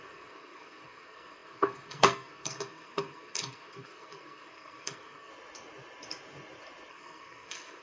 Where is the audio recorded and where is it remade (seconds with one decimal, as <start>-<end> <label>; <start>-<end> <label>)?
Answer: 0.0-5.3 remade; 5.3-6.9 recorded; 6.9-7.8 remade

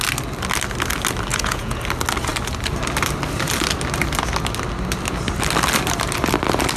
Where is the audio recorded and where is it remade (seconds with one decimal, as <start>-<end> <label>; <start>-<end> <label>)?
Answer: 0.0-1.3 recorded; 1.3-1.8 remade; 1.8-6.8 recorded